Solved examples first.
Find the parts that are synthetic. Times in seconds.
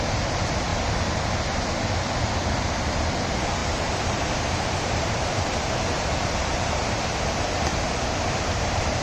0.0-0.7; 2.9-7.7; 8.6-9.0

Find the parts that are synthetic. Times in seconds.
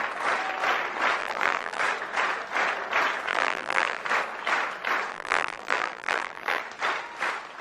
1.2-1.8; 3.3-4.0; 5.1-6.6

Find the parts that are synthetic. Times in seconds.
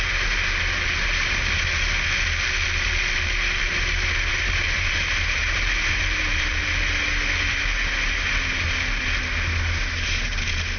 4.3-6.6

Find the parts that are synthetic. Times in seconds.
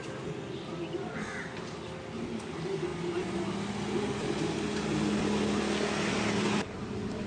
none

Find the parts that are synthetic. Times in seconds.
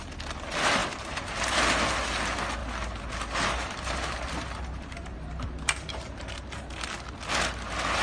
0.8-1.4; 2.6-6.8